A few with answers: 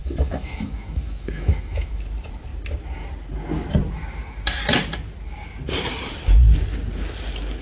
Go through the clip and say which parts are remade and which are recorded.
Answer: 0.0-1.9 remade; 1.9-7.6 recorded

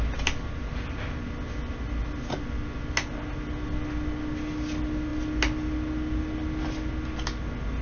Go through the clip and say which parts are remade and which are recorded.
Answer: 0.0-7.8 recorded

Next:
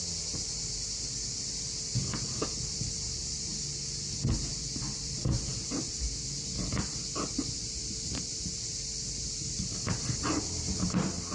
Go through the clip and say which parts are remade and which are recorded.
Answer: 0.0-3.5 remade; 3.5-4.5 recorded; 4.5-11.3 remade

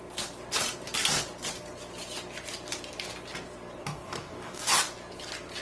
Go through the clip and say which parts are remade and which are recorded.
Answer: 0.0-3.8 recorded; 3.8-4.6 remade; 4.6-5.6 recorded

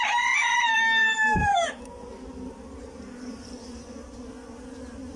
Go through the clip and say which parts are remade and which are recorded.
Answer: 0.0-1.0 recorded; 1.0-1.8 remade; 1.8-5.2 recorded

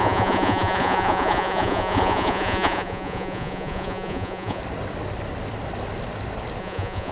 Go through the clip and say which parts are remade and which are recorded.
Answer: 0.0-4.6 remade; 4.6-6.6 recorded; 6.6-7.1 remade